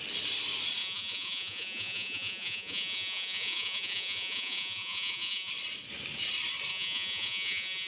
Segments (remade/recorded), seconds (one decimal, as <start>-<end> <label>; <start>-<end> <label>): 0.0-0.8 recorded; 0.8-5.5 remade; 5.5-6.7 recorded; 6.7-7.9 remade